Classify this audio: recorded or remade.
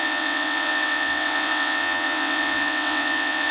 remade